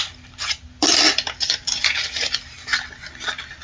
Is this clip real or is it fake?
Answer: real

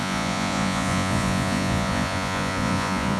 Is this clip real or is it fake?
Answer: fake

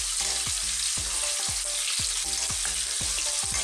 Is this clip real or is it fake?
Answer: real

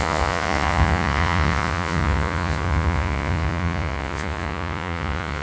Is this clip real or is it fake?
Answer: fake